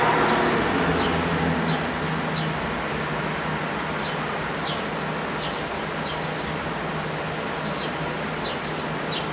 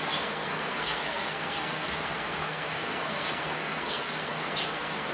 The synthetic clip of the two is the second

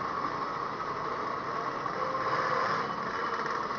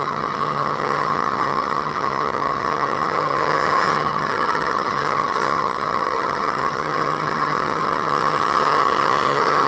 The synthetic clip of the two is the second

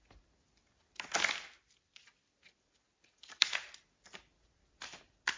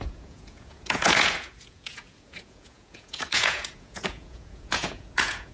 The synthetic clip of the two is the second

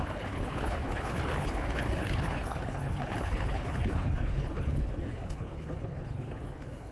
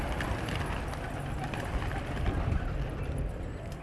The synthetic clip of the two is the first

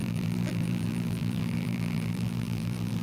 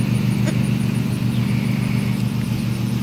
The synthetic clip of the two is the first